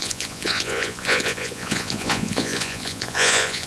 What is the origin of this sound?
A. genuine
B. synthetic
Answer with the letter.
B